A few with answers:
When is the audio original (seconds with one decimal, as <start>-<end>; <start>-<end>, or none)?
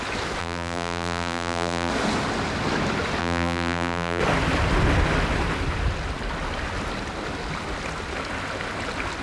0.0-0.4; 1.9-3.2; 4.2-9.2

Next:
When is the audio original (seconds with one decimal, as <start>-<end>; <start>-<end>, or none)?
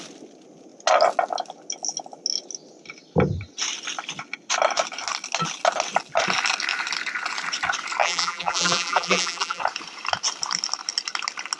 0.0-8.0; 9.6-11.6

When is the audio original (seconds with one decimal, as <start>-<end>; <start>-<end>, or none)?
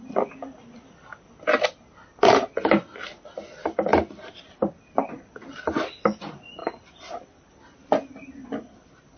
0.0-3.9; 4.8-6.6; 7.5-9.2